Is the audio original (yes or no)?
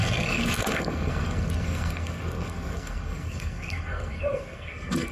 no